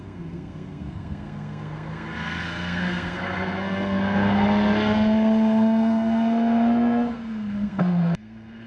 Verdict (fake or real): fake